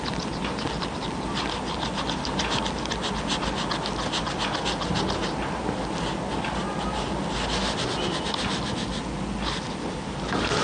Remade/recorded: recorded